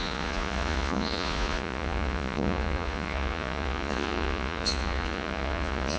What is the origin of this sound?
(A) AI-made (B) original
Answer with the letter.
A